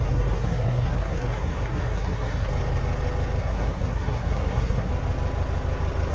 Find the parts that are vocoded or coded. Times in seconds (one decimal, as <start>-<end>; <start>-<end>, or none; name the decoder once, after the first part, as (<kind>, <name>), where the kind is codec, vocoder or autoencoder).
0.0-2.5 (codec, SNAC); 3.4-4.9